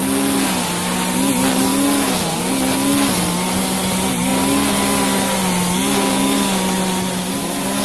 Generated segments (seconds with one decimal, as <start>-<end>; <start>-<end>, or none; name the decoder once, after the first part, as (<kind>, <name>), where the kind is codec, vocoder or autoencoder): none